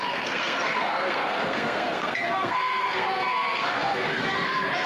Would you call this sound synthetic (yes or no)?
yes